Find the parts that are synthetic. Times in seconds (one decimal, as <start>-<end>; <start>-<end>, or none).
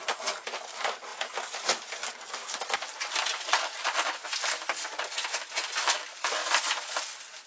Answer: 1.1-3.1; 6.4-6.9